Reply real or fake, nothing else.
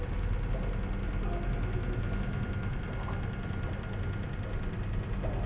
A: real